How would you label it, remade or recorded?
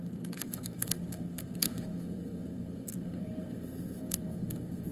remade